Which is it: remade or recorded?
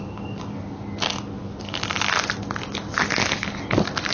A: recorded